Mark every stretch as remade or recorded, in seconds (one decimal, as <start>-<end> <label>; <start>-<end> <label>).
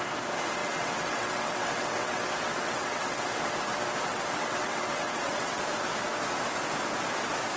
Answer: 0.0-0.6 recorded; 0.6-3.2 remade; 3.2-4.1 recorded; 4.1-5.6 remade; 5.6-7.6 recorded